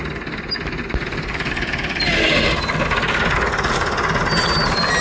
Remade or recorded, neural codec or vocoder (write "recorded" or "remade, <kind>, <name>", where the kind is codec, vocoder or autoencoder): recorded